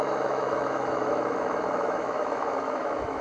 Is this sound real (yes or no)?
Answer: no